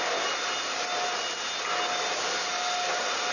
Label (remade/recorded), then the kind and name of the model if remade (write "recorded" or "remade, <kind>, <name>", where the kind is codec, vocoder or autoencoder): recorded